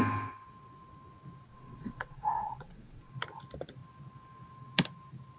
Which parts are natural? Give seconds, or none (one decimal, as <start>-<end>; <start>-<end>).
0.0-1.5; 3.1-5.4